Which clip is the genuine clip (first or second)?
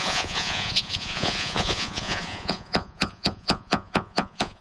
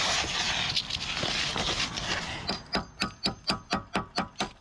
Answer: second